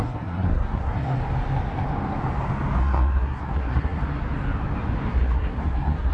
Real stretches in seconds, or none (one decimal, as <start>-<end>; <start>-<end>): 1.2-2.8; 4.0-5.1